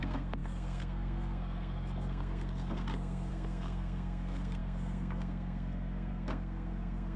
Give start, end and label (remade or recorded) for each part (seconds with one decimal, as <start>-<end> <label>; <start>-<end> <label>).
0.0-7.2 remade